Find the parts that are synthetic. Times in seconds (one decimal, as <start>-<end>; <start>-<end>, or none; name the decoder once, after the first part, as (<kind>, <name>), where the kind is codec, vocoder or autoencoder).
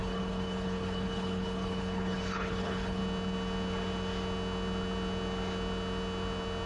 0.0-3.0 (codec, HILCodec)